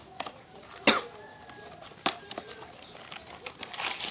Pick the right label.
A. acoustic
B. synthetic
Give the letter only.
A